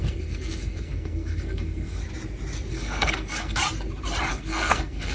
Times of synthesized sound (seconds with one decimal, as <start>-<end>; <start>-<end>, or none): 0.0-2.0; 2.7-3.6; 4.3-5.1